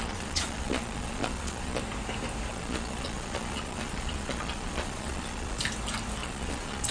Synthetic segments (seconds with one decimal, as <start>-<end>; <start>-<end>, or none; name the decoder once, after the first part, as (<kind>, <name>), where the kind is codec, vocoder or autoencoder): 0.0-1.8 (vocoder, Vocos); 2.5-5.6; 6.2-6.9